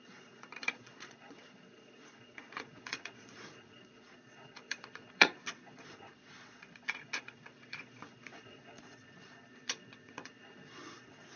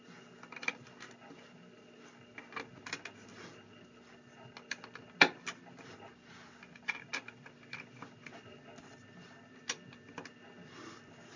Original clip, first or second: second